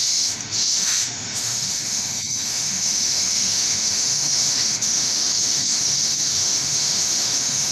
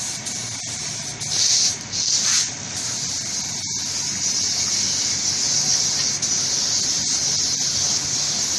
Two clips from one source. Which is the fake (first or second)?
first